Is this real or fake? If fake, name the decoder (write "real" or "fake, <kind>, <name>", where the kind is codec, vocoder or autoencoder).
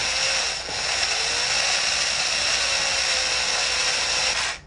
real